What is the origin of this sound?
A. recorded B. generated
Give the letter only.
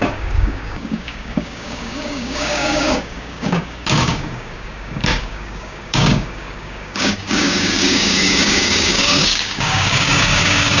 B